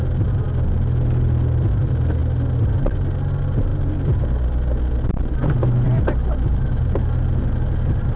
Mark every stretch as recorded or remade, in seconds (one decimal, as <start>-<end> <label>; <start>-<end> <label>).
0.0-8.2 recorded